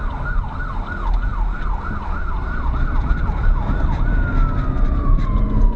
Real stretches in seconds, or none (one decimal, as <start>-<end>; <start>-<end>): 0.0-5.8